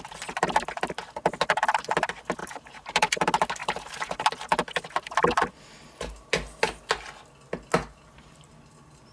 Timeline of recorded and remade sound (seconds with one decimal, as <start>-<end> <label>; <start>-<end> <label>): 0.0-2.4 recorded; 2.4-3.1 remade; 3.1-3.6 recorded; 3.6-4.2 remade; 4.2-9.1 recorded